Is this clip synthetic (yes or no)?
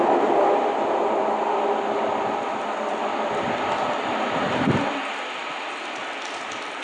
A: no